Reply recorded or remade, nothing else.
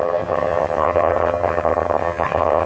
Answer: remade